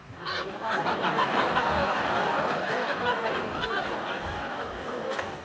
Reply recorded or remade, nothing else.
remade